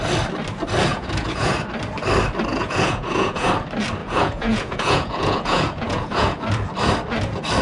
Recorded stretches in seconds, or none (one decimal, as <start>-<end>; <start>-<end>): 0.0-0.9; 1.5-2.5; 3.5-4.0; 6.4-7.6